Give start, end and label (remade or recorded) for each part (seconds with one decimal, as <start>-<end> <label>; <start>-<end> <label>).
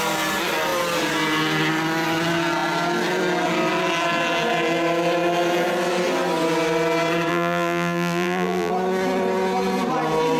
0.0-7.3 recorded; 7.3-8.7 remade; 8.7-10.4 recorded